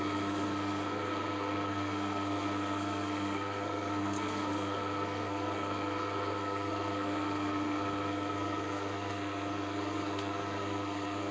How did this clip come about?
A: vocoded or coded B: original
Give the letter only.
A